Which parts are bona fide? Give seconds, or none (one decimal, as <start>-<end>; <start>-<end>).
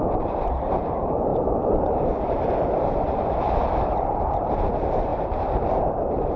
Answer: none